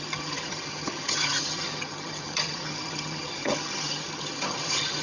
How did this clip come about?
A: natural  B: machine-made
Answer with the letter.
B